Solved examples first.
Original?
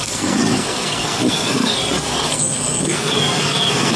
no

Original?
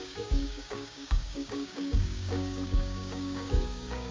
no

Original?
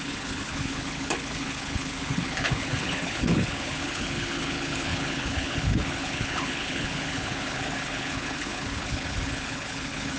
no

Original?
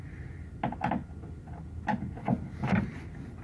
yes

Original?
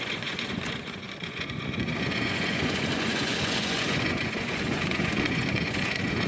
no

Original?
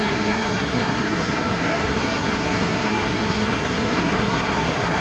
no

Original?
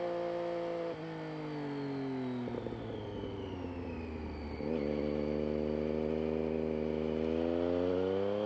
yes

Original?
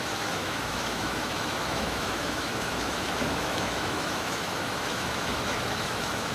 no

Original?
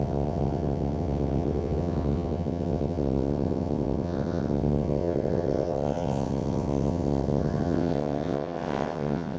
no